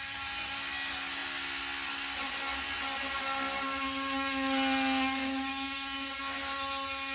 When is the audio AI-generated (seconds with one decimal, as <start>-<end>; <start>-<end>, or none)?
5.5-6.2